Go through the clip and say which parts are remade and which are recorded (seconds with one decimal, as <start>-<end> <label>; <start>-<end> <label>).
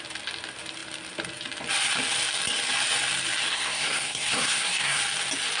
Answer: 0.0-3.5 recorded; 3.5-5.0 remade; 5.0-5.6 recorded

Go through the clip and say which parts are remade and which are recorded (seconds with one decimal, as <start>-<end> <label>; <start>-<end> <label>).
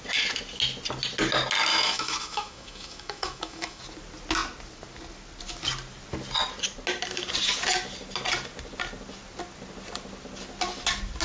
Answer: 0.0-1.7 recorded; 1.7-3.8 remade; 3.8-11.2 recorded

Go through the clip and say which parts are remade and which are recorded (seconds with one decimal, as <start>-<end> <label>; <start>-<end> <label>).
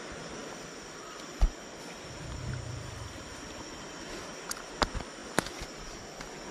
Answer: 0.0-0.4 recorded; 0.4-4.3 remade; 4.3-5.2 recorded; 5.2-6.0 remade; 6.0-6.5 recorded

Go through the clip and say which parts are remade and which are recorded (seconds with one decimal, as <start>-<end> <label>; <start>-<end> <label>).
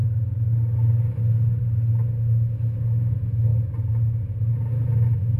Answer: 0.0-5.4 recorded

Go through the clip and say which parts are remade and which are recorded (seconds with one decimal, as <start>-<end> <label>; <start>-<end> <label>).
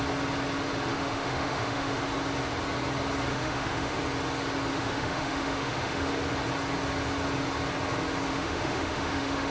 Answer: 0.0-0.9 recorded; 0.9-2.0 remade; 2.0-3.3 recorded; 3.3-4.0 remade; 4.0-4.7 recorded; 4.7-6.1 remade; 6.1-8.3 recorded; 8.3-9.5 remade